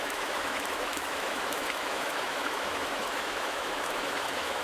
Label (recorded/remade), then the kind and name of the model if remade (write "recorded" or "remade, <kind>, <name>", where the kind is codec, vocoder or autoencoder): remade, autoencoder, DAC-VAE